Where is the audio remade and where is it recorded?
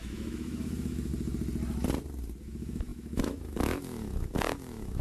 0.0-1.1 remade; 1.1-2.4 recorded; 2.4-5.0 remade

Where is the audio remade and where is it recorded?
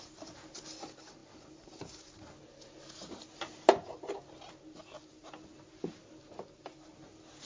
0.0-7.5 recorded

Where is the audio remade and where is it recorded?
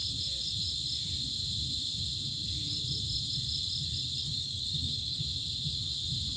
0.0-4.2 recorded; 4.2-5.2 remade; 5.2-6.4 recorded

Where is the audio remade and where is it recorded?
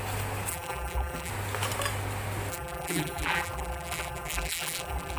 0.0-0.5 recorded; 0.5-1.3 remade; 1.3-2.5 recorded; 2.5-5.2 remade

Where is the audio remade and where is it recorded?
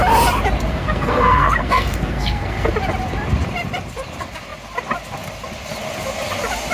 0.0-0.7 recorded; 0.7-2.7 remade; 2.7-6.7 recorded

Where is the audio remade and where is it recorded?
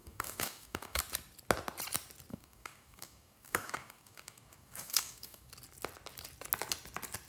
0.0-1.0 remade; 1.0-2.3 recorded; 2.3-5.5 remade; 5.5-7.3 recorded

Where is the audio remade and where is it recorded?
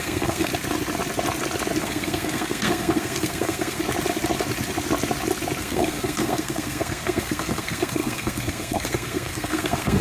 0.0-0.5 remade; 0.5-1.8 recorded; 1.8-3.8 remade; 3.8-5.6 recorded; 5.6-10.0 remade